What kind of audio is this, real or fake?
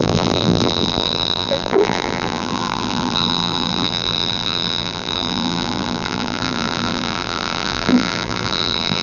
fake